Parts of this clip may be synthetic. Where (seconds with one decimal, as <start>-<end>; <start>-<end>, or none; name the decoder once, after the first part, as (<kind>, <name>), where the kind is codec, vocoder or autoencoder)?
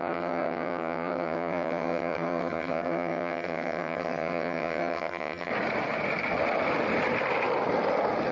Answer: 0.0-5.5 (vocoder, HiFi-GAN)